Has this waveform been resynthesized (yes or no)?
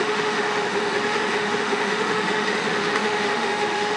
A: yes